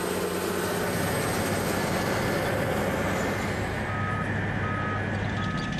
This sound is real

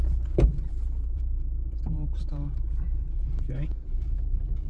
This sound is fake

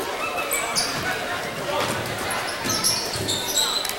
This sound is real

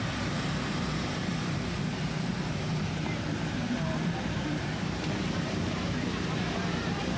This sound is fake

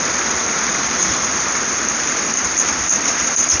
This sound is fake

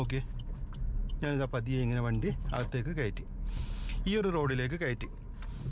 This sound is real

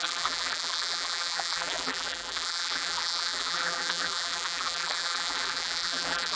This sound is fake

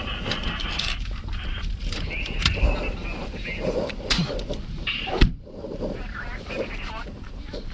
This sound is fake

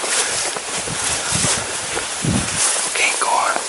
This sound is fake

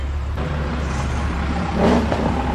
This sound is fake